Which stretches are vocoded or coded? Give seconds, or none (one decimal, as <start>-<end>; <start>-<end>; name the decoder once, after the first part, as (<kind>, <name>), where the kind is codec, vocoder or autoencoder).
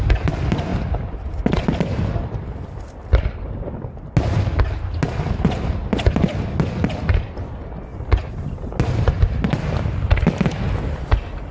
none